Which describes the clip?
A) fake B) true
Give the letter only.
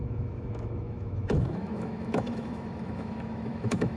A